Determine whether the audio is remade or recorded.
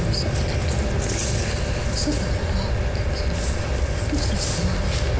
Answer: recorded